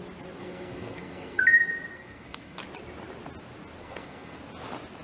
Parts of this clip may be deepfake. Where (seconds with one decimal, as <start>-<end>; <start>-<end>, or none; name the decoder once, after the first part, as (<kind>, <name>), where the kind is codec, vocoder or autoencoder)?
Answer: 0.4-1.4 (codec, SNAC); 1.9-2.6; 3.8-4.4